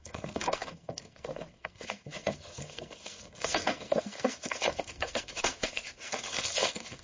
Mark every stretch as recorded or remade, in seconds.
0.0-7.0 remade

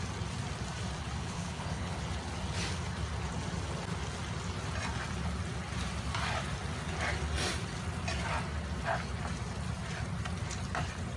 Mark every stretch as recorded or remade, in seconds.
0.0-1.2 recorded; 1.2-2.0 remade; 2.0-11.2 recorded

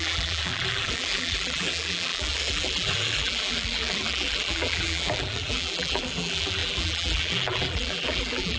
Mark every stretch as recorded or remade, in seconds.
0.0-8.6 remade

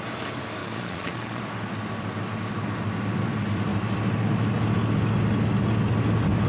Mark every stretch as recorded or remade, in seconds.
0.0-0.6 recorded; 0.6-1.4 remade; 1.4-6.5 recorded

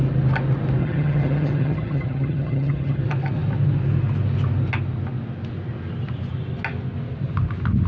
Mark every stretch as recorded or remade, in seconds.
0.0-0.8 recorded; 0.8-3.0 remade; 3.0-7.9 recorded